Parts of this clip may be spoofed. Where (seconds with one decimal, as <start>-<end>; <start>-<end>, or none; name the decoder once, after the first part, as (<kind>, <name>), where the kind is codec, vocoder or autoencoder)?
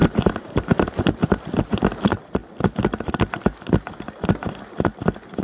0.0-2.4 (vocoder, BigVGAN v2)